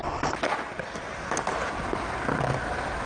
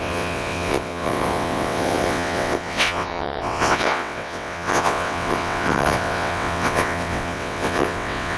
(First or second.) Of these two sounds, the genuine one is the first